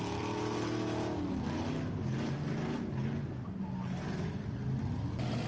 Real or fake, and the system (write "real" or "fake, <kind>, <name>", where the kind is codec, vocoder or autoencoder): real